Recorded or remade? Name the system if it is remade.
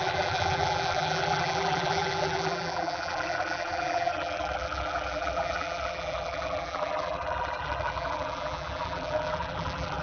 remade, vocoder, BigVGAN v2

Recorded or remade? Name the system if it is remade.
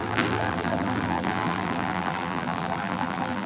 remade, vocoder, BigVGAN v2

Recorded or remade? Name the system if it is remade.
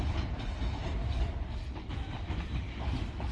recorded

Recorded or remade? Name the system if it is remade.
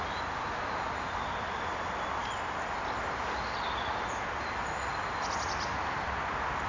recorded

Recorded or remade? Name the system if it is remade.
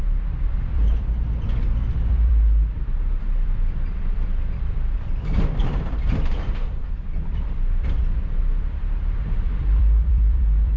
remade, vocoder, BigVGAN v2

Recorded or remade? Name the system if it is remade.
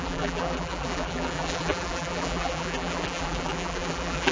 remade, vocoder, BigVGAN v2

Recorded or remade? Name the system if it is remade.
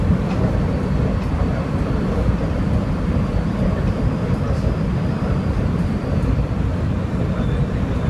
remade, vocoder, BigVGAN v2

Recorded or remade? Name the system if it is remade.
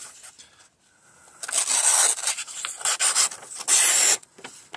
recorded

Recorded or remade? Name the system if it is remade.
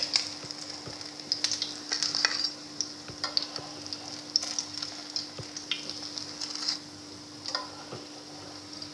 recorded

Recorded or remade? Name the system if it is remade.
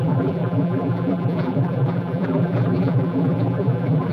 remade, vocoder, BigVGAN v2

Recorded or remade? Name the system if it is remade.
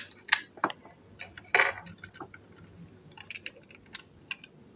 recorded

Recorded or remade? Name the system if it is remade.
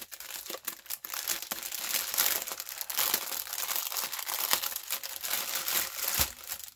recorded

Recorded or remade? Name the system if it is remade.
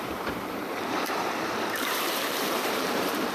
remade, vocoder, BigVGAN v2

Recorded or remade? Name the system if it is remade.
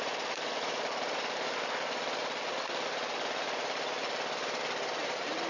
remade, vocoder, BigVGAN v2